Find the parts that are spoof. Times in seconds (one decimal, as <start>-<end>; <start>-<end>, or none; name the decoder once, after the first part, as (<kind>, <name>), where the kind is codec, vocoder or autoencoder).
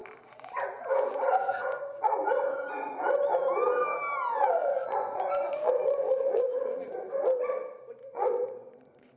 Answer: 0.0-2.9 (vocoder, Vocos); 4.6-7.1; 8.0-9.2